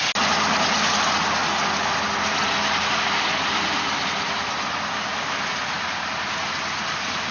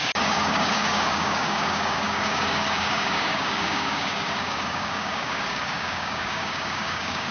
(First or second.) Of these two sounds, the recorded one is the first